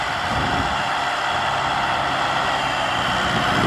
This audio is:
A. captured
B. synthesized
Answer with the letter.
A